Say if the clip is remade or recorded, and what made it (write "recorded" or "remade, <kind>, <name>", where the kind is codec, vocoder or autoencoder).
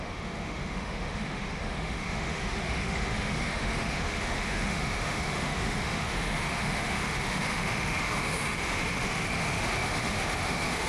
remade, autoencoder, DAC-VAE